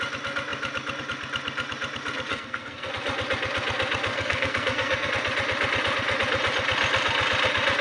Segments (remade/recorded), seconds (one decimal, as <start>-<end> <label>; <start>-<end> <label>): 0.0-2.3 recorded; 2.3-2.9 remade; 2.9-4.1 recorded; 4.1-5.1 remade; 5.1-7.8 recorded